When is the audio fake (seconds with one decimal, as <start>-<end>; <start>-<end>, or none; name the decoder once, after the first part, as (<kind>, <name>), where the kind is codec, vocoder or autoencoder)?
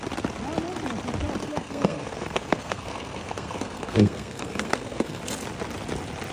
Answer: 1.4-5.2 (codec, SNAC)